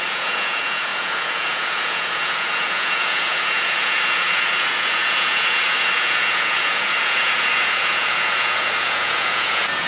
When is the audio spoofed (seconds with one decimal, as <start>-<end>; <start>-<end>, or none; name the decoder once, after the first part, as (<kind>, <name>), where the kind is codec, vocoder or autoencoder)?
0.0-9.9 (vocoder, Vocos)